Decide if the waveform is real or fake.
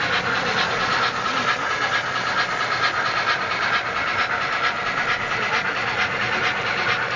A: real